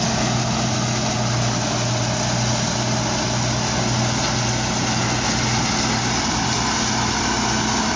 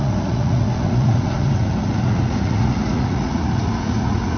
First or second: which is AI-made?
second